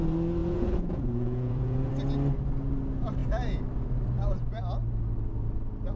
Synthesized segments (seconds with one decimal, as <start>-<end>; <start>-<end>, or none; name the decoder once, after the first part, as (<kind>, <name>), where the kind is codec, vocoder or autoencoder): 0.4-1.9 (vocoder, Vocos)